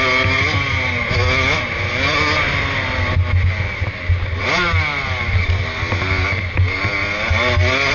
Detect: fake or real real